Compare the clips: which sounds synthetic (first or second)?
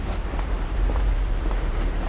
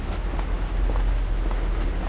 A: first